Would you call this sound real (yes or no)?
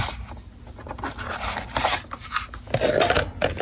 yes